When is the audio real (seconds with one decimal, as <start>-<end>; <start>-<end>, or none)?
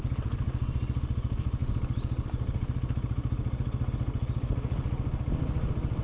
0.0-1.6; 3.9-6.0